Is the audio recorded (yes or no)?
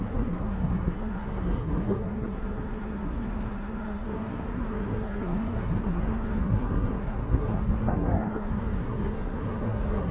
no